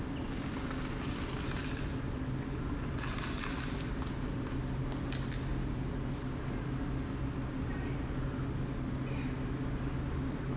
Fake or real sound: real